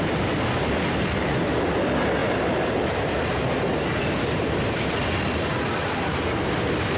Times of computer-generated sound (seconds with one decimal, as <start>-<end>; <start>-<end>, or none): none